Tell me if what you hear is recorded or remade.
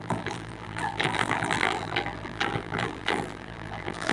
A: remade